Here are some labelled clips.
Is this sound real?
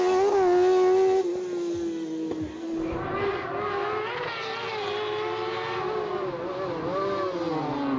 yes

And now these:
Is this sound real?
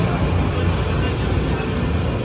yes